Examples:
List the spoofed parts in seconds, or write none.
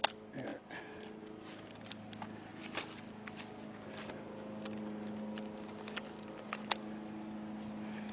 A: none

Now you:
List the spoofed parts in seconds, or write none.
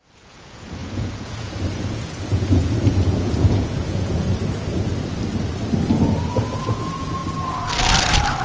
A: 0.0-4.3; 6.3-7.2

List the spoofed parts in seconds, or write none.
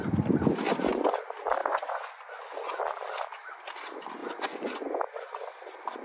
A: 1.6-2.8; 4.2-5.0